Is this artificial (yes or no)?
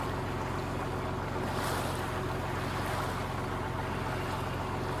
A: no